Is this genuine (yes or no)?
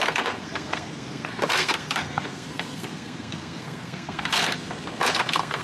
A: no